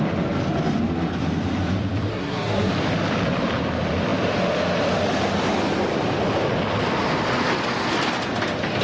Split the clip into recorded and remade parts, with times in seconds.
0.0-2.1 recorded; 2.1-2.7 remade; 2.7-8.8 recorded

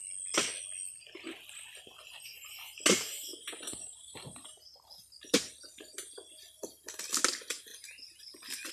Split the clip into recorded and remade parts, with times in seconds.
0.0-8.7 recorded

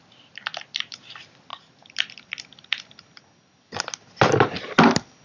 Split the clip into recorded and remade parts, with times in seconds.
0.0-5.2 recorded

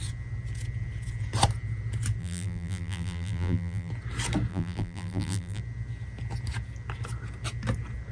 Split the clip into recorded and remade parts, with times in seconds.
0.0-2.2 recorded; 2.2-3.9 remade; 3.9-4.5 recorded; 4.5-5.6 remade; 5.6-8.1 recorded